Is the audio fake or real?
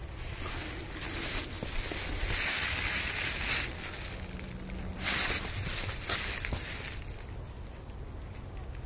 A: real